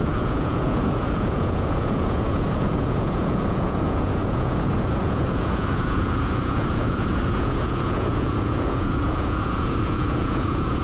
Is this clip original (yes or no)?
no